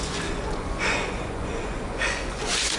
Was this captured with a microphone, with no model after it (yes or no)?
no